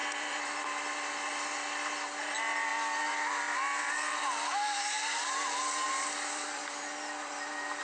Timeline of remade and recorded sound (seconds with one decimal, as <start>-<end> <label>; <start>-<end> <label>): 0.0-7.8 recorded